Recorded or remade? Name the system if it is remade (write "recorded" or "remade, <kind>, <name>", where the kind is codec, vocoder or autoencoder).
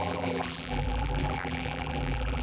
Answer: remade, vocoder, BigVGAN v2